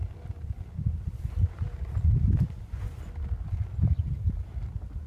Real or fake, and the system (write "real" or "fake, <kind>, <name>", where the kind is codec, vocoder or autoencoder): real